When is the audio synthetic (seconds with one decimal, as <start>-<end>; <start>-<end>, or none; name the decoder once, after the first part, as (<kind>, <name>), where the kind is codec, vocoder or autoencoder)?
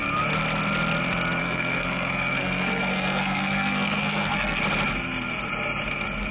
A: 1.4-4.6 (codec, SNAC)